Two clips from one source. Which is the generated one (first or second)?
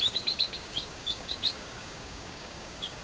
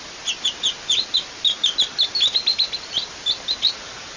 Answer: first